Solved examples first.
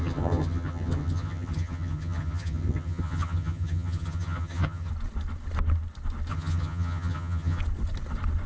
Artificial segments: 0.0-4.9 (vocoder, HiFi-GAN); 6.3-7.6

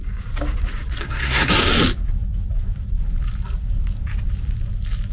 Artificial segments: 1.0-1.5 (codec, SNAC)

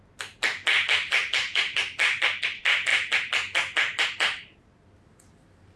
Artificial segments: 1.4-2.4 (vocoder, BigVGAN v2)

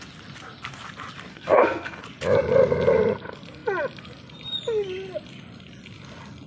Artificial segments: 1.3-2.0 (codec, SNAC)